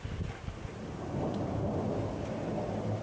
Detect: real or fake real